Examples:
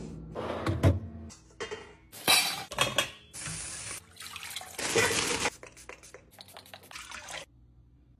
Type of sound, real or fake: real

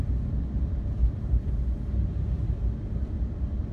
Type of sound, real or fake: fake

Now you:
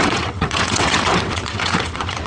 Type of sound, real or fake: fake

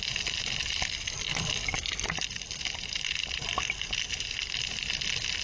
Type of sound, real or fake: real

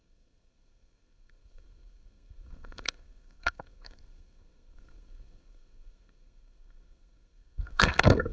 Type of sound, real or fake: fake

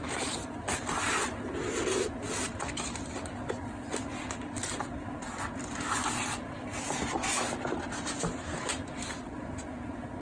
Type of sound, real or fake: real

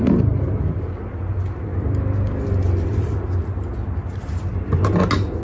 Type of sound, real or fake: real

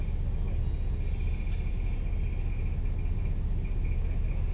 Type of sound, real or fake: real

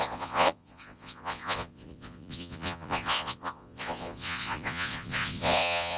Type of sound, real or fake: fake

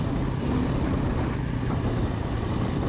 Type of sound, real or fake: real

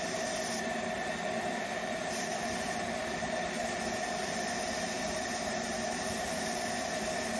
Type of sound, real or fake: fake